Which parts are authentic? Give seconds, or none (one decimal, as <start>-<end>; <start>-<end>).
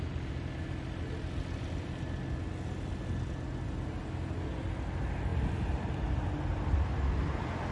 0.0-7.7